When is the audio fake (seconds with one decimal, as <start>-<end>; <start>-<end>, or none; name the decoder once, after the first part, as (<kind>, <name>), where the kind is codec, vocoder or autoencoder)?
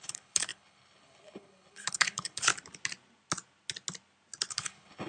0.0-2.5 (codec, HILCodec); 4.5-5.1